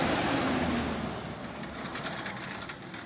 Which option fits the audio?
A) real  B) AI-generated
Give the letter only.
A